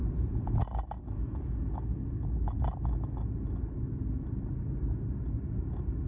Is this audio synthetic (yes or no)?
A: no